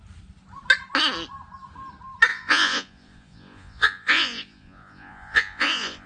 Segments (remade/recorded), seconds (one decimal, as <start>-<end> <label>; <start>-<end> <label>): 0.0-2.3 recorded; 2.3-6.1 remade